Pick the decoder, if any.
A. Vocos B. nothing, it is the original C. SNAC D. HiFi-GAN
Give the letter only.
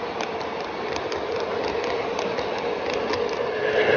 B